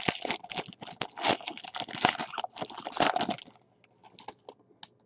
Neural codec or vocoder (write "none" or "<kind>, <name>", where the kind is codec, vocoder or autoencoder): none